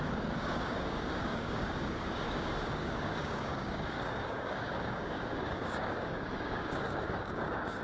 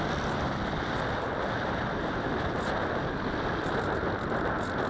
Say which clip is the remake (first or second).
first